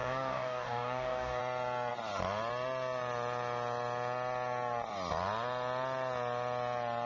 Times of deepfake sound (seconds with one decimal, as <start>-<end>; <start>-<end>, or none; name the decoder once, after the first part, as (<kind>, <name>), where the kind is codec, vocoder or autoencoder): 0.0-1.4 (codec, DAC)